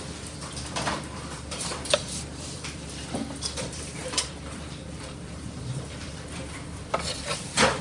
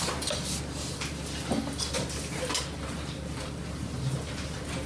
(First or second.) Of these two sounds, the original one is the second